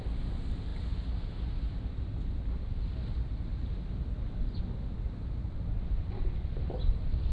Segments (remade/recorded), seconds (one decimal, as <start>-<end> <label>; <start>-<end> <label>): 0.0-7.3 recorded